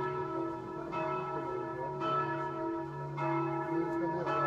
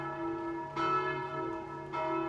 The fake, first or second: first